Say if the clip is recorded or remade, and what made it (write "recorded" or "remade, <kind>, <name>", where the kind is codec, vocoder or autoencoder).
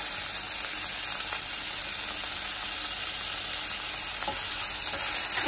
recorded